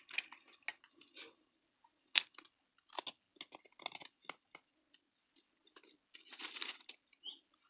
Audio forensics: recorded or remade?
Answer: recorded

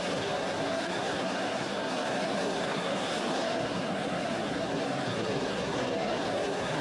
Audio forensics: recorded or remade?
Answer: remade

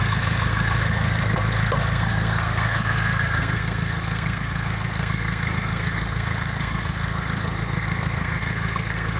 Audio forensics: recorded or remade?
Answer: remade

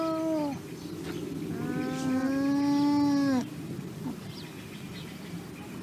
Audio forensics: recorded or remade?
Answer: recorded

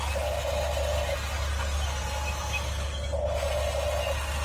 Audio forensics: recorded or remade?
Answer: recorded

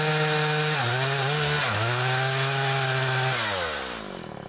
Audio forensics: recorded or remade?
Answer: recorded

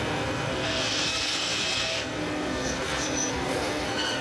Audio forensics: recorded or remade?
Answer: remade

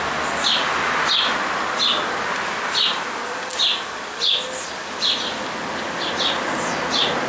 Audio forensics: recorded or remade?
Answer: recorded